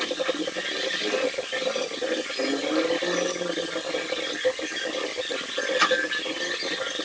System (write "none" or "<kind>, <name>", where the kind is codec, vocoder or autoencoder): none